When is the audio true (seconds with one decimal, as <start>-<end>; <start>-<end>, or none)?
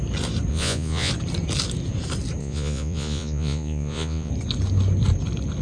0.0-0.5; 1.1-2.4; 4.3-5.6